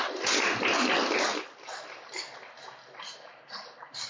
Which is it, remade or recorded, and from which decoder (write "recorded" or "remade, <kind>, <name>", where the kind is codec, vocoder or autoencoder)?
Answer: recorded